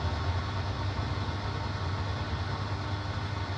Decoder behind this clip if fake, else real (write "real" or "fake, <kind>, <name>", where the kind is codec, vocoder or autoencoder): real